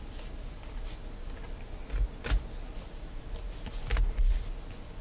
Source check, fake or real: real